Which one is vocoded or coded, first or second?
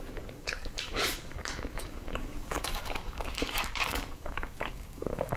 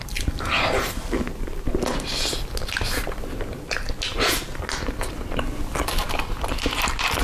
first